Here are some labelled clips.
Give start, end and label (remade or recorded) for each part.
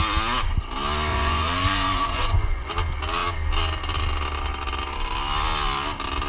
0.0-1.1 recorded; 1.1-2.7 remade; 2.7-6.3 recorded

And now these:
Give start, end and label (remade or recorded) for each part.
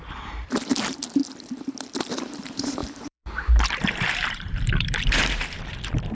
0.0-1.2 remade; 1.2-2.2 recorded; 2.2-6.1 remade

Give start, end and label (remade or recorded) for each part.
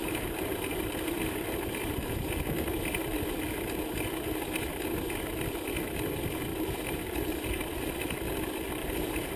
0.0-6.5 recorded; 6.5-8.2 remade; 8.2-8.8 recorded; 8.8-9.4 remade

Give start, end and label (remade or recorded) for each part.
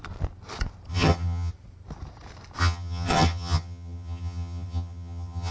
0.0-0.9 recorded; 0.9-1.5 remade; 1.5-2.6 recorded; 2.6-5.5 remade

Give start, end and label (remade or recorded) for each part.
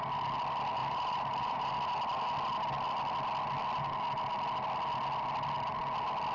0.0-0.8 recorded; 0.8-1.7 remade; 1.7-6.3 recorded